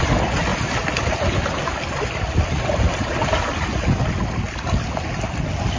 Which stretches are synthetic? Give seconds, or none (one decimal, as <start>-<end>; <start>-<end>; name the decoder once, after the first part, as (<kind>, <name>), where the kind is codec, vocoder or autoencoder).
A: 0.5-4.0 (vocoder, BigVGAN v2)